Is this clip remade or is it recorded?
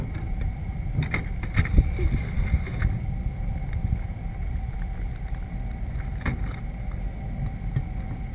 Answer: recorded